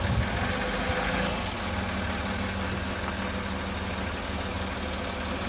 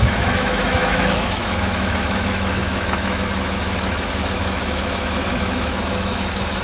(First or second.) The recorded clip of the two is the first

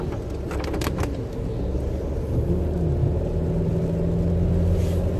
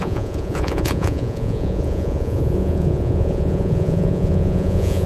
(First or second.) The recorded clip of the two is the first